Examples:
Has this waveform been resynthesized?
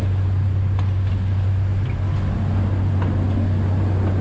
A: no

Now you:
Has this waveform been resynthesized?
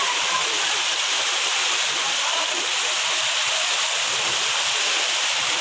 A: no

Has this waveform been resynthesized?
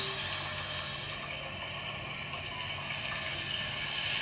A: no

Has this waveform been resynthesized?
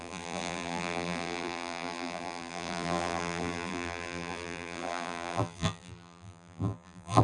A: yes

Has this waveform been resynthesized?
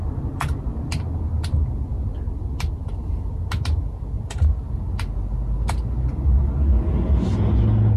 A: no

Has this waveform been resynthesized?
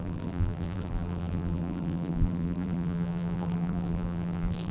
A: yes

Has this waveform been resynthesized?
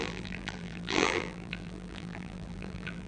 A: yes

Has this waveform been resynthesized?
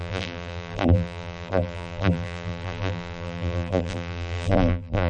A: yes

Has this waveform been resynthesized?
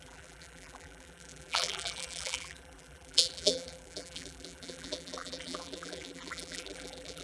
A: yes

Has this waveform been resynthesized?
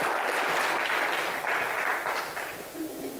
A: no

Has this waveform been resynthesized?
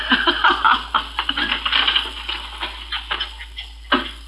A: no